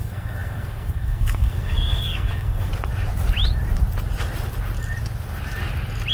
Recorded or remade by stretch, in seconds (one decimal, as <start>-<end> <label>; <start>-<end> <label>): 0.0-2.7 remade; 2.7-6.1 recorded